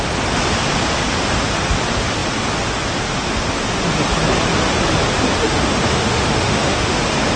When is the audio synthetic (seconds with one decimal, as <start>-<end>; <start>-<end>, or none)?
5.4-7.0